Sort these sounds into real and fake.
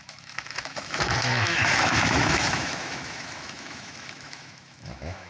fake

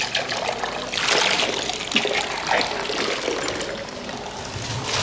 real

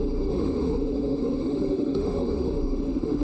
fake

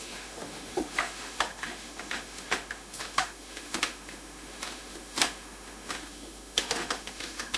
fake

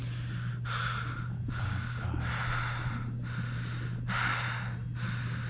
real